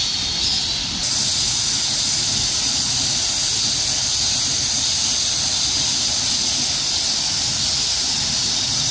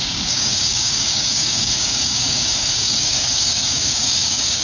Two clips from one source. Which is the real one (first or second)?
first